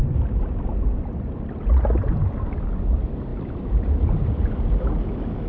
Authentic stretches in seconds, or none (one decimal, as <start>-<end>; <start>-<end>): 0.0-5.5

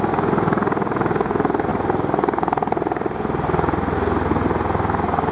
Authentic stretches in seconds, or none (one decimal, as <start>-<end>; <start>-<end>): 0.0-5.3

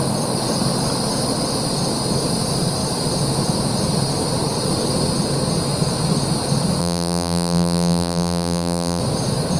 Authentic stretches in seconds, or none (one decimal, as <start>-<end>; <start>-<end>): 0.0-6.8; 9.0-9.6

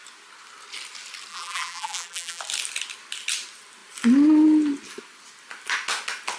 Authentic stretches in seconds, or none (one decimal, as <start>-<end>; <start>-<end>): 0.0-1.3; 2.4-6.4

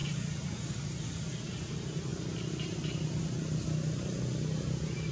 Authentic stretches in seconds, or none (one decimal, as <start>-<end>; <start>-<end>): 0.0-5.1

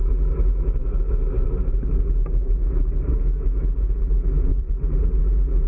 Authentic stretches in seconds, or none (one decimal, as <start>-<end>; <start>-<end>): 0.0-4.5; 5.2-5.7

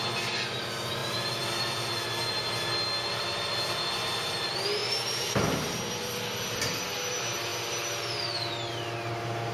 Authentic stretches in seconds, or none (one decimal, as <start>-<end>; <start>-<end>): 0.0-4.8; 6.6-9.5